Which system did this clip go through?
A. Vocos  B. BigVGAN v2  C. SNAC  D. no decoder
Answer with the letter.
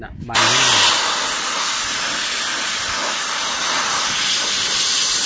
D